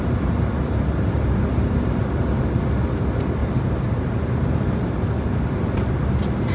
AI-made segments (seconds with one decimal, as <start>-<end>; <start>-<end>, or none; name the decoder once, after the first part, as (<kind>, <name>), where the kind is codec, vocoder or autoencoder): 3.4-4.8 (vocoder, BigVGAN v2)